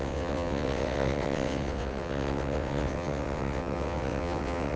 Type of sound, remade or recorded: remade